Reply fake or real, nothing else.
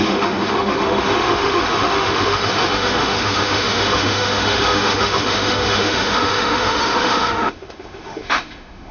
fake